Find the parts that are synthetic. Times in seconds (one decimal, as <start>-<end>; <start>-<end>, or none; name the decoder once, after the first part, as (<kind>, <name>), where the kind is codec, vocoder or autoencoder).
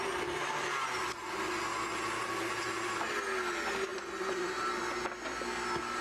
none